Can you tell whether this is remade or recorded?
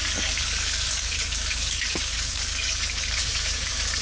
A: remade